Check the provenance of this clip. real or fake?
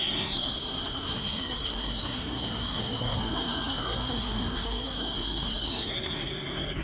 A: fake